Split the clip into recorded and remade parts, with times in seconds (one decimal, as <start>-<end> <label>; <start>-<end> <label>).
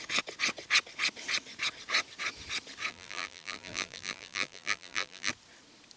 0.0-2.9 recorded; 2.9-5.3 remade; 5.3-6.0 recorded